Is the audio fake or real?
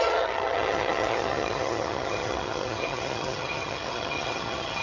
fake